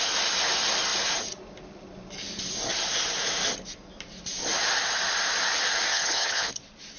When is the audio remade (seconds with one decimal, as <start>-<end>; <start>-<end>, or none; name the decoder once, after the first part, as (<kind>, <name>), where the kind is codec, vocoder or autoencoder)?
5.9-6.5 (codec, HILCodec)